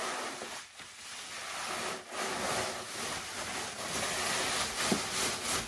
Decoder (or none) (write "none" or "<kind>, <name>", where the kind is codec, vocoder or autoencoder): none